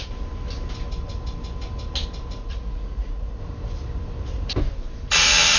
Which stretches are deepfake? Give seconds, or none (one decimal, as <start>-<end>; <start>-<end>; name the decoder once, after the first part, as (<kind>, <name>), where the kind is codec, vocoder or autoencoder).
2.4-3.4 (vocoder, Vocos)